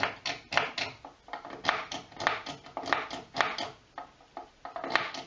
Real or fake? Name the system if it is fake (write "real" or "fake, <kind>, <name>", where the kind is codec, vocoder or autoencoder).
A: real